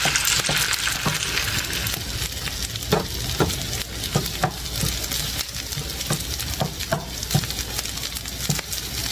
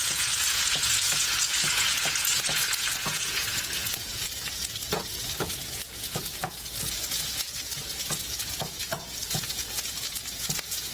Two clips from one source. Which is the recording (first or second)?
first